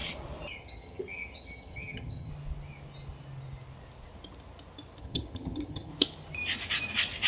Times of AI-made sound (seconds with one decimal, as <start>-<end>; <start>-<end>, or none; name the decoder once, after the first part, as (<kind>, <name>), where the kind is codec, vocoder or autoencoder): 0.5-2.3 (vocoder, HiFi-GAN); 5.0-5.9